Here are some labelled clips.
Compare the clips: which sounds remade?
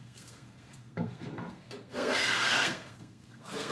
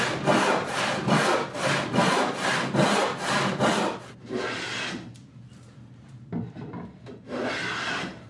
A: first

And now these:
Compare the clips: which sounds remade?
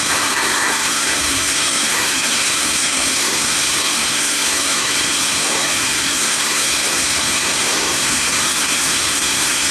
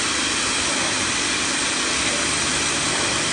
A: first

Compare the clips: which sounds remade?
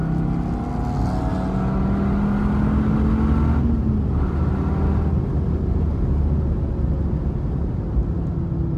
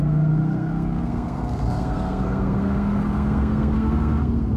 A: second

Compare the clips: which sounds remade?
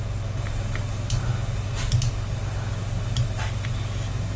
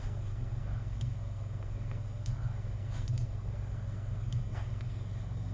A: second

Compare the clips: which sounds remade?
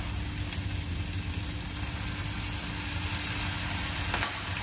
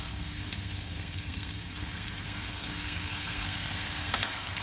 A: second